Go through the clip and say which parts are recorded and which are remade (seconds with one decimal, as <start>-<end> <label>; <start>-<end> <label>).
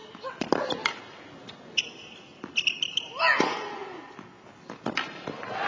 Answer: 0.0-5.7 recorded